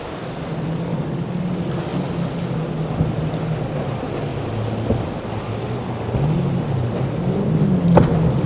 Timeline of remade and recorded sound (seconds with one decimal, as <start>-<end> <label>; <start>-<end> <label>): 0.0-8.5 recorded